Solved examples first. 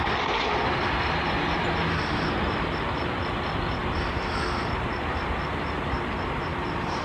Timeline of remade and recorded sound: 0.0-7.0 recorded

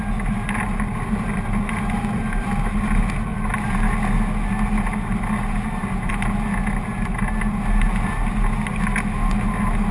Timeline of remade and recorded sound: 0.0-9.9 recorded

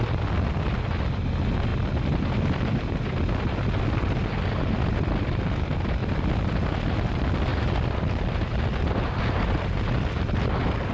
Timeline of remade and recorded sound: 0.0-10.9 recorded

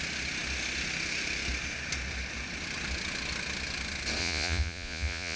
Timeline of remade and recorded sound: 0.0-4.2 recorded; 4.2-5.4 remade

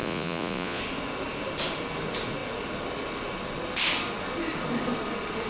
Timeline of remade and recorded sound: 0.0-0.8 remade; 0.8-5.5 recorded

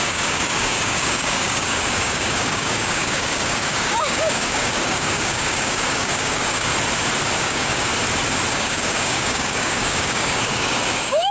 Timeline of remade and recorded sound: 0.0-6.7 remade; 6.7-7.4 recorded; 7.4-7.9 remade; 7.9-8.5 recorded; 8.5-11.3 remade

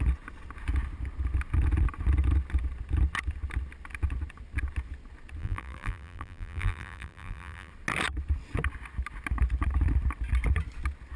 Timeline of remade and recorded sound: 0.0-5.4 recorded; 5.4-7.7 remade; 7.7-11.2 recorded